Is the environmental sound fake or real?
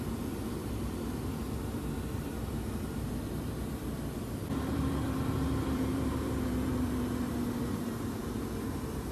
fake